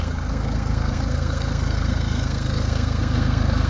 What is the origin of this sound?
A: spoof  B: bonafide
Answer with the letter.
A